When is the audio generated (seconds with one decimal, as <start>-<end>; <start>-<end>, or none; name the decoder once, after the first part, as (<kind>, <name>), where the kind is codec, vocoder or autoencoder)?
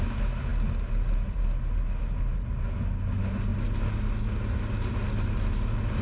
none